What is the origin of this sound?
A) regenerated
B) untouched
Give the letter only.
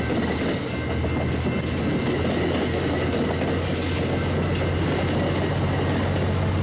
B